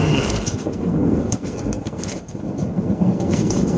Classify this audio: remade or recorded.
remade